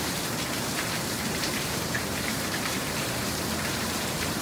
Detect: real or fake fake